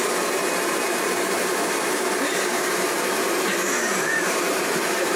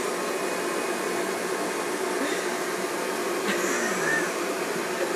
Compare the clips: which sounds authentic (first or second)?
second